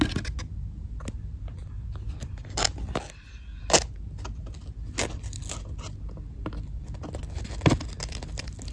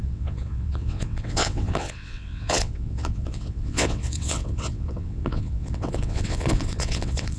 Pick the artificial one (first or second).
second